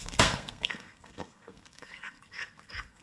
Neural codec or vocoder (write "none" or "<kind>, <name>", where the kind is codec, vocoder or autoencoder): codec, SNAC